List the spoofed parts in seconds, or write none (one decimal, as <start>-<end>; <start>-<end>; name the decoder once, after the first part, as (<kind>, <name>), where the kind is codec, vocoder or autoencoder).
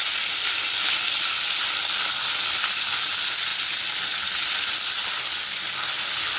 1.8-3.1 (vocoder, BigVGAN v2); 3.5-6.0